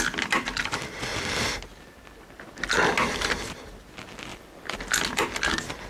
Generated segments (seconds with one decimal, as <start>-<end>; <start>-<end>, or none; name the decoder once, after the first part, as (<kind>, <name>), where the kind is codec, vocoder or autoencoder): 4.3-4.8 (vocoder, BigVGAN v2)